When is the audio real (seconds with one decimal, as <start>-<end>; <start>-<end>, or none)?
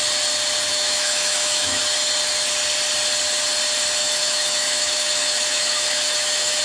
0.0-0.7; 1.8-4.0